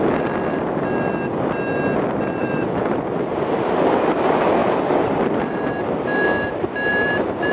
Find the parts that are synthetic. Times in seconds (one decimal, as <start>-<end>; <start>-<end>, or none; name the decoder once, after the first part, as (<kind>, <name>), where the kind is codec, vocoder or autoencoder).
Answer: 2.4-3.3 (vocoder, BigVGAN v2)